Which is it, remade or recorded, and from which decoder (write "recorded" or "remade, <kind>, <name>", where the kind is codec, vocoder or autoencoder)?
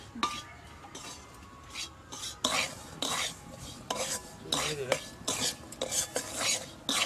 recorded